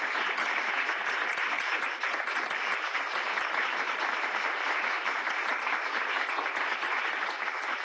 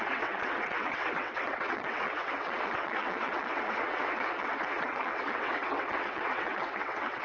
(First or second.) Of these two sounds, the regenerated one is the second